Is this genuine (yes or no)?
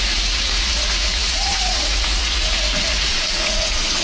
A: no